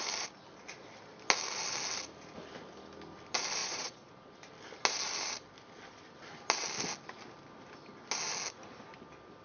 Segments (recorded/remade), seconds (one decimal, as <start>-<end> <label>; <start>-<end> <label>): 0.0-3.6 recorded; 3.6-4.1 remade; 4.1-9.4 recorded